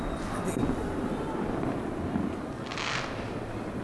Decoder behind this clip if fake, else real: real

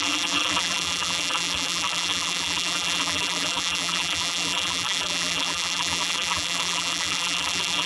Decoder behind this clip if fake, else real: fake, vocoder, BigVGAN v2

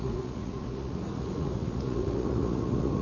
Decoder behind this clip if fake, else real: fake, vocoder, Vocos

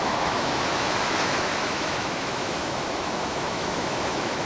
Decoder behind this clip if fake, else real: fake, autoencoder, DAC-VAE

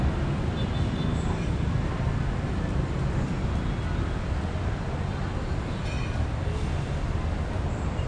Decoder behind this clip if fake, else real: real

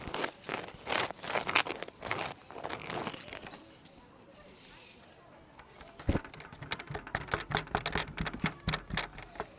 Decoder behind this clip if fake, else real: real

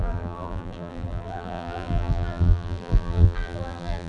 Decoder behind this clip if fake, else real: fake, vocoder, BigVGAN v2